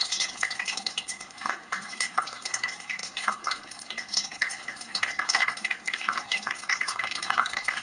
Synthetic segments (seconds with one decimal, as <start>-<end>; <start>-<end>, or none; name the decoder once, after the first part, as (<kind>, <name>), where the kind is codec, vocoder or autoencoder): 0.0-7.8 (codec, SNAC)

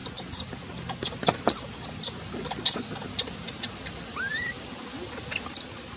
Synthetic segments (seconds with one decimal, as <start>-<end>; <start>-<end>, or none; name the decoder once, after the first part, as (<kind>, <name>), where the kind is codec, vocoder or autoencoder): none

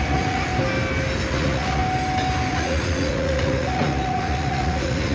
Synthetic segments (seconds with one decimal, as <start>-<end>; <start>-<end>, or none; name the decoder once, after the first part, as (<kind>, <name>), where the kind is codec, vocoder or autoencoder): 0.0-0.5 (vocoder, Vocos); 1.3-1.8; 2.5-5.1

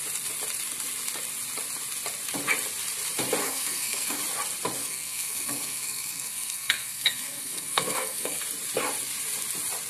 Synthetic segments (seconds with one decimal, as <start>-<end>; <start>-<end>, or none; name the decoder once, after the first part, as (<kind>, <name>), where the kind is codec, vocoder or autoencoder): 3.4-4.2 (codec, SNAC); 4.8-8.4

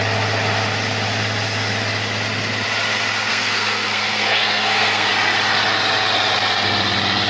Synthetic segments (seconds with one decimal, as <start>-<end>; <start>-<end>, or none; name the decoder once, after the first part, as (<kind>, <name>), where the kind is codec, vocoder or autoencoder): 3.3-5.1 (codec, SNAC)

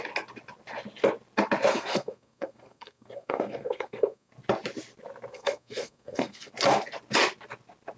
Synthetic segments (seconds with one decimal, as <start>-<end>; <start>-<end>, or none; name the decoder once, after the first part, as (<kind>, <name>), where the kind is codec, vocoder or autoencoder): 1.7-4.3 (codec, SNAC); 5.3-6.5

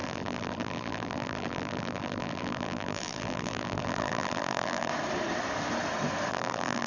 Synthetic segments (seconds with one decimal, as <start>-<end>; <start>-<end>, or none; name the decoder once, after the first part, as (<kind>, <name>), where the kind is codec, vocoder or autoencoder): 0.0-4.9 (vocoder, BigVGAN v2); 6.3-6.9

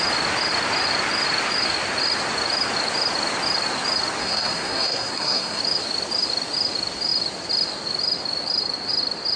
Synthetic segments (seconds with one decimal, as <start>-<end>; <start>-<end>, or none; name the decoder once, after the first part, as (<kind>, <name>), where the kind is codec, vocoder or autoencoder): 4.2-5.6 (codec, SNAC)